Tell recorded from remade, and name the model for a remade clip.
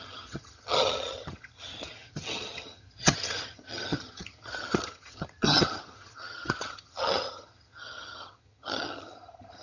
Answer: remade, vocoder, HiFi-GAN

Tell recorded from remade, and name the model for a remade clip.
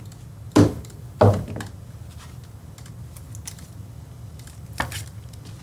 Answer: recorded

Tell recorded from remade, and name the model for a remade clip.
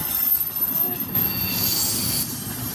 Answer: recorded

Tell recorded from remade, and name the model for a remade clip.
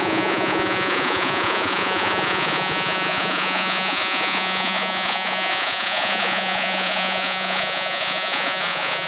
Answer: remade, vocoder, Vocos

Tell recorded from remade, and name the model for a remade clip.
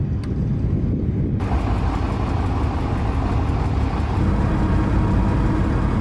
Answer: recorded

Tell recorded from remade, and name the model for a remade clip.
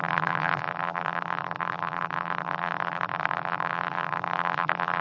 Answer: remade, vocoder, BigVGAN v2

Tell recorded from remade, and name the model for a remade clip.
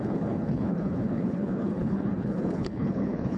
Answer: remade, codec, HILCodec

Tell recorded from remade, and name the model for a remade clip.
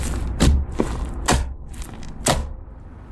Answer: recorded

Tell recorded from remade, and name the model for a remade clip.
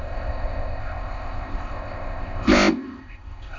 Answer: remade, codec, ZipCodec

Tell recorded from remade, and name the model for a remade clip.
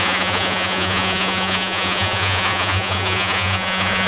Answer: remade, vocoder, Vocos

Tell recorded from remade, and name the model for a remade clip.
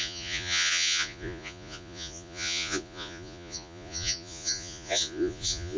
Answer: remade, vocoder, Vocos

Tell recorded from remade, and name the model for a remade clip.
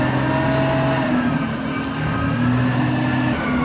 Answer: recorded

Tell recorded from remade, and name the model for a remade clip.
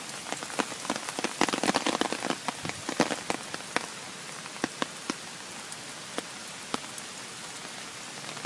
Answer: recorded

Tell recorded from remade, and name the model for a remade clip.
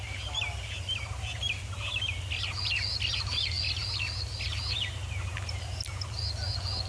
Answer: recorded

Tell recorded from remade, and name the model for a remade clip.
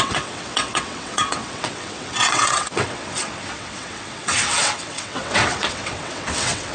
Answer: remade, vocoder, WaveNeXt